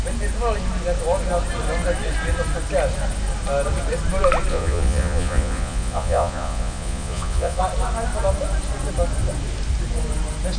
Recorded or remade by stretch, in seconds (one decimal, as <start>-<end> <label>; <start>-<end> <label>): 0.0-4.5 recorded; 4.5-7.6 remade; 7.6-10.6 recorded